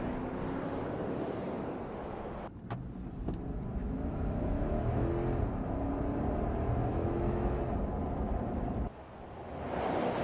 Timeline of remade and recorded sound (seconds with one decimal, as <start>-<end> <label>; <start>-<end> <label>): 0.0-3.8 recorded; 3.8-5.1 remade; 5.1-6.9 recorded; 6.9-7.6 remade; 7.6-10.2 recorded